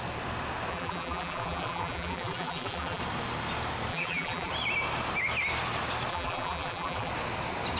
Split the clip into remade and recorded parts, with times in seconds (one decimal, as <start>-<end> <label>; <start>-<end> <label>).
0.0-0.7 recorded; 0.7-3.0 remade; 3.0-3.9 recorded; 3.9-4.5 remade; 4.5-6.1 recorded; 6.1-7.1 remade; 7.1-7.8 recorded